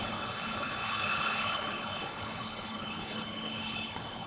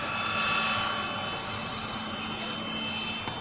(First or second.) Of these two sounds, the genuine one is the second